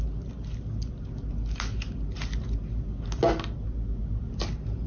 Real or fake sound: real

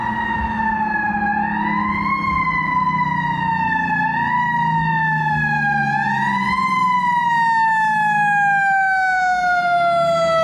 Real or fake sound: real